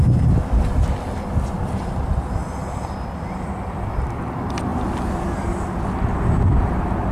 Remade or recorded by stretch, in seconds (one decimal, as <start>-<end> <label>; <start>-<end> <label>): 0.0-4.7 remade; 4.7-6.5 recorded; 6.5-7.1 remade